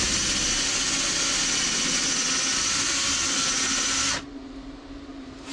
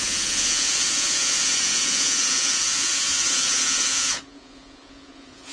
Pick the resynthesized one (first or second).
second